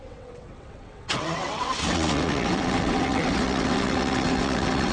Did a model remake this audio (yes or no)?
yes